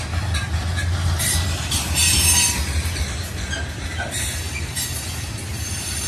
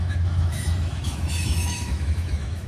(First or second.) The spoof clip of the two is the second